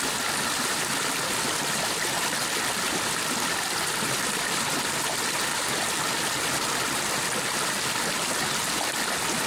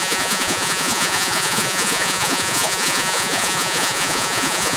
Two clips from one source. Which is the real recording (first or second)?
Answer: first